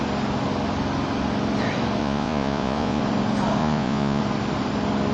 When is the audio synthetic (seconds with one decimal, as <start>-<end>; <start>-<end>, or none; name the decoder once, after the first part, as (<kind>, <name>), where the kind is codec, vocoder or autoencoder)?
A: 2.0-3.0 (vocoder, Vocos); 3.6-4.2